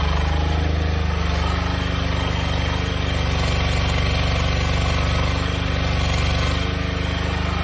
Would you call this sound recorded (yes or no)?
yes